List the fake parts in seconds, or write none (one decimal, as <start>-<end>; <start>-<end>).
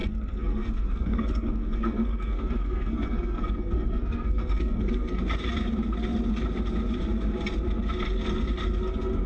0.0-5.2